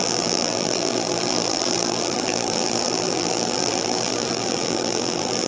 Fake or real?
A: fake